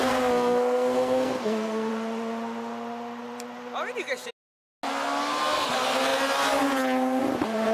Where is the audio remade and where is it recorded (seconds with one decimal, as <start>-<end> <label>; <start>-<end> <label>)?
0.0-1.9 remade; 1.9-7.7 recorded

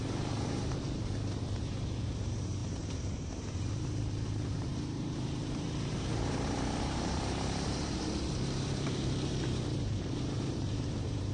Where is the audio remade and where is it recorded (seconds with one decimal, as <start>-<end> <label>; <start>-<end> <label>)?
0.0-11.3 remade

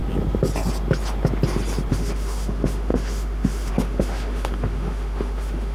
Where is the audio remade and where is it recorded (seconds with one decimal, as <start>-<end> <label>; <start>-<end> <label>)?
0.0-1.9 recorded; 1.9-5.7 remade

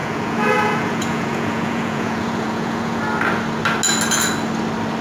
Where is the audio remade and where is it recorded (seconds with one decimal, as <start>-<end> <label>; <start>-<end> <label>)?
0.0-3.0 remade; 3.0-5.0 recorded

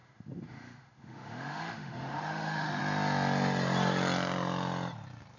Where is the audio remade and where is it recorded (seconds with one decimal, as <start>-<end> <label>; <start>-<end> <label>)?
0.0-2.8 remade; 2.8-5.4 recorded

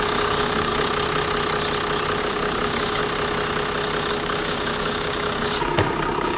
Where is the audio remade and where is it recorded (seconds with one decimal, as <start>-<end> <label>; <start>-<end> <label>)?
0.0-0.7 remade; 0.7-2.2 recorded; 2.2-3.0 remade; 3.0-4.1 recorded; 4.1-6.4 remade

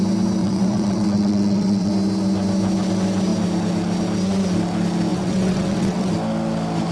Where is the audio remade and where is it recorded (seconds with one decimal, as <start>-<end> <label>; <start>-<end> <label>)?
0.0-0.4 recorded; 0.4-1.9 remade; 1.9-5.1 recorded; 5.1-6.1 remade; 6.1-6.9 recorded

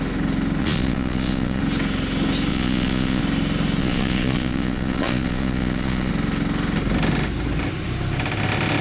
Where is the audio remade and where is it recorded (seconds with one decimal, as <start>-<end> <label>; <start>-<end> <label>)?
0.0-0.6 recorded; 0.6-1.6 remade; 1.6-2.5 recorded; 2.5-3.2 remade; 3.2-3.8 recorded; 3.8-6.1 remade; 6.1-8.8 recorded